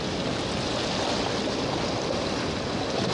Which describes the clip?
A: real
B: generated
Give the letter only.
A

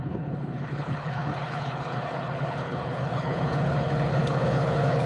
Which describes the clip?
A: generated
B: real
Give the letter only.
A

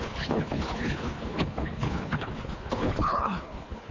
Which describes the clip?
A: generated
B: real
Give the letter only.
A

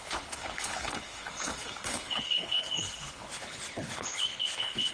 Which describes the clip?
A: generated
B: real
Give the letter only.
A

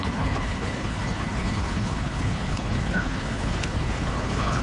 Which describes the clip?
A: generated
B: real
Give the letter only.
A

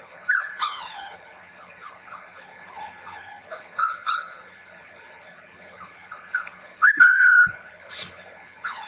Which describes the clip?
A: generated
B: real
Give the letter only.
A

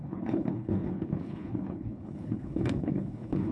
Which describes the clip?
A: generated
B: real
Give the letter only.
A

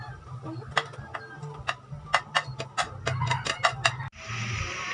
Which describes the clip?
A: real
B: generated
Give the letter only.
A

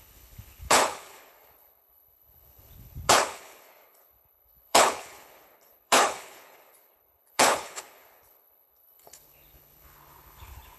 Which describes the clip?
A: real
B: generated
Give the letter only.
B